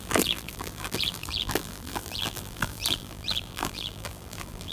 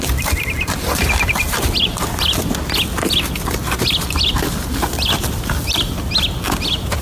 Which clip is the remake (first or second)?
first